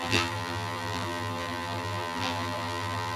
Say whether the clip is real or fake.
fake